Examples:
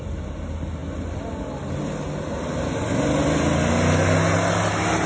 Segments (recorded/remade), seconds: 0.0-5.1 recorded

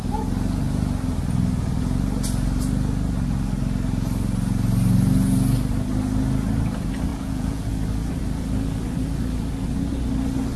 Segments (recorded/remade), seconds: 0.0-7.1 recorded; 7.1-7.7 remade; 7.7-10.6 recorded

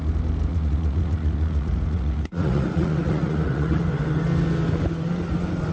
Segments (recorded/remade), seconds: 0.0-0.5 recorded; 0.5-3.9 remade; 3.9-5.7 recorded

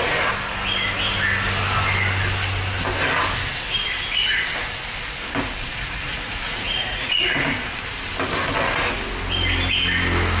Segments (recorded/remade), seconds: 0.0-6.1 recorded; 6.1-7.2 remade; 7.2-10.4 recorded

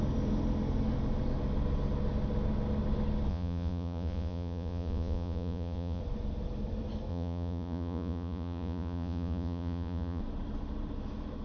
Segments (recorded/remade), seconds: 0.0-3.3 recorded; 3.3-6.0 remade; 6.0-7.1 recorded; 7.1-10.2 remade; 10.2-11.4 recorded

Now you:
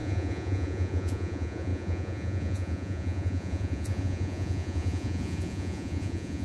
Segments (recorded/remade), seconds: 0.0-6.4 remade

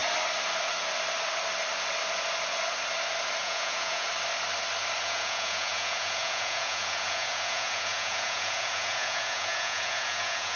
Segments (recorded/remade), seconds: 0.0-3.4 recorded; 3.4-4.1 remade; 4.1-5.0 recorded; 5.0-10.6 remade